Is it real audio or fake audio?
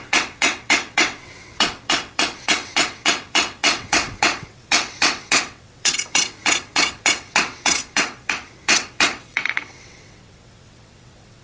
fake